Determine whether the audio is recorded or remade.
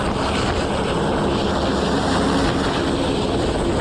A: recorded